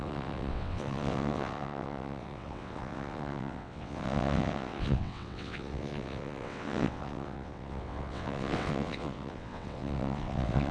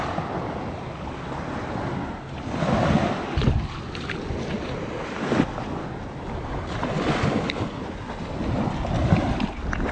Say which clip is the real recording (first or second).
second